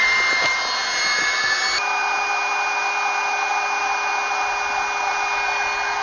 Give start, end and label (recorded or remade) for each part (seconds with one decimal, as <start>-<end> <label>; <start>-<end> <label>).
0.0-6.0 recorded